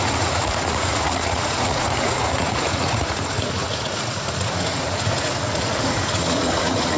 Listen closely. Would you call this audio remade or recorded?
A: remade